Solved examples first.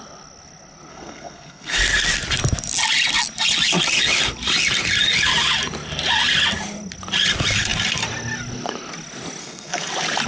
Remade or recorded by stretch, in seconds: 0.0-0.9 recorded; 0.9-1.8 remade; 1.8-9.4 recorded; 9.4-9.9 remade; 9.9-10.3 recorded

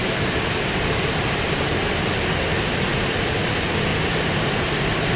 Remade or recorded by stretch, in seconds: 0.0-1.7 remade; 1.7-3.9 recorded; 3.9-4.5 remade; 4.5-5.2 recorded

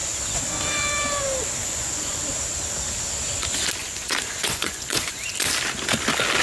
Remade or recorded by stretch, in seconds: 0.0-1.6 recorded; 1.6-2.2 remade; 2.2-3.8 recorded; 3.8-5.3 remade; 5.3-6.4 recorded

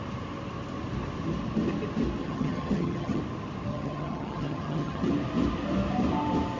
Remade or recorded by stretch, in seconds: 0.0-2.2 recorded; 2.2-3.2 remade; 3.2-3.7 recorded; 3.7-5.1 remade; 5.1-6.6 recorded

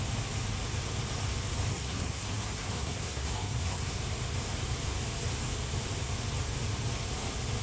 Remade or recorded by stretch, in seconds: 0.0-1.7 recorded; 1.7-4.0 remade; 4.0-7.6 recorded

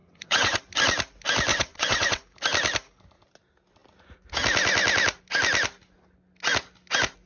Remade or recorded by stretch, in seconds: 0.0-0.6 remade; 0.6-1.5 recorded; 1.5-2.2 remade; 2.2-7.3 recorded

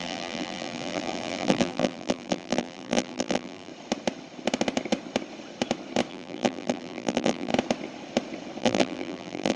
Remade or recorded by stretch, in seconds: 0.0-3.7 remade; 3.7-6.1 recorded; 6.1-7.5 remade; 7.5-8.6 recorded; 8.6-9.6 remade

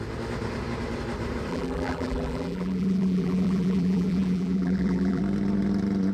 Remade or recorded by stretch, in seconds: 0.0-1.5 recorded; 1.5-5.2 remade; 5.2-6.1 recorded